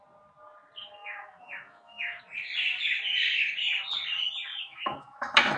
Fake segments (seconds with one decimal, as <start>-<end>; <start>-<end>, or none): 1.0-2.2; 4.5-5.6